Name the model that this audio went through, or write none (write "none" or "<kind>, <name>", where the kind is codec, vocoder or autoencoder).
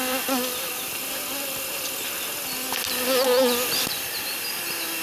none